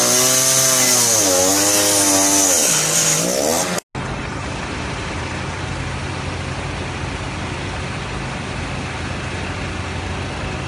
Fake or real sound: real